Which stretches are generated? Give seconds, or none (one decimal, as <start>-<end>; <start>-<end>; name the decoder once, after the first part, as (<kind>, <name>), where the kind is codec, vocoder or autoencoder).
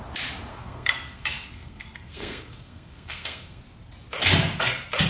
0.5-3.6 (codec, SNAC)